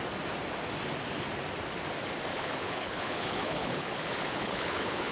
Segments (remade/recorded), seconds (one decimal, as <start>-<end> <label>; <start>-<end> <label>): 0.0-2.3 recorded; 2.3-5.1 remade